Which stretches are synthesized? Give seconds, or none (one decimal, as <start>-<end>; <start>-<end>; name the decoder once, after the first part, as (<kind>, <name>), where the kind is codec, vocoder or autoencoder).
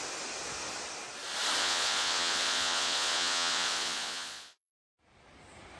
1.6-4.7 (vocoder, Vocos)